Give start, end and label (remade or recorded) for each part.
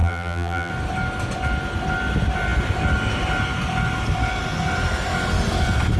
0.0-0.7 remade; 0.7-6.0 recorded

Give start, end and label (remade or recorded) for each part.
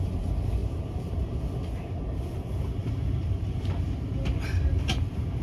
0.0-0.6 recorded; 0.6-1.4 remade; 1.4-2.8 recorded; 2.8-3.7 remade; 3.7-5.4 recorded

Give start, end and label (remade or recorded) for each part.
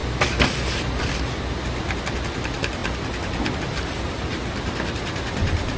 0.0-5.8 recorded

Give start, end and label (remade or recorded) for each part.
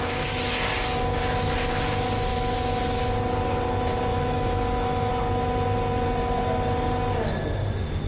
0.0-2.3 recorded; 2.3-2.8 remade; 2.8-4.1 recorded; 4.1-5.1 remade; 5.1-8.1 recorded